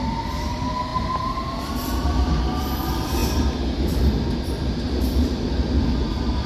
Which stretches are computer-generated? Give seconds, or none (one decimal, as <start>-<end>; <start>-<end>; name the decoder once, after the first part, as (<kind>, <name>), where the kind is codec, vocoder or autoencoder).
none